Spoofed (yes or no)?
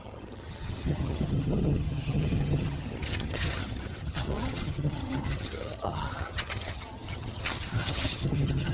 yes